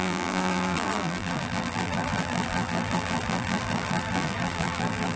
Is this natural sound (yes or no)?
no